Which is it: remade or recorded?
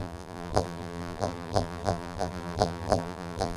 remade